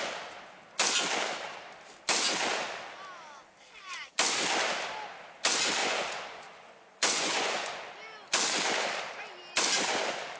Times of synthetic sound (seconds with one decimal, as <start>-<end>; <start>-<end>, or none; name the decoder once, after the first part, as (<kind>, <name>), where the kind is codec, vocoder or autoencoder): 5.8-7.9 (vocoder, Vocos)